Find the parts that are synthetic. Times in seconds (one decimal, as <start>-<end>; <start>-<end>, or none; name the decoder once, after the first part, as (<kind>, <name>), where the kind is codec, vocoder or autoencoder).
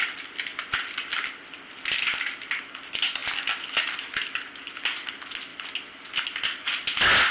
none